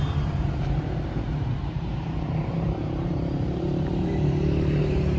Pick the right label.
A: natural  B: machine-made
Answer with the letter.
B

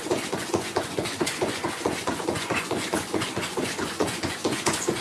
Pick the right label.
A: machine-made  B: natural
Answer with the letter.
A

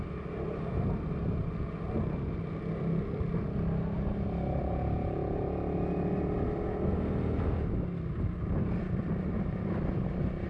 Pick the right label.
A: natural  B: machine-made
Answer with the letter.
A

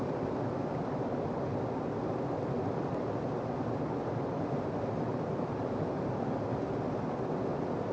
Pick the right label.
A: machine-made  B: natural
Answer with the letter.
B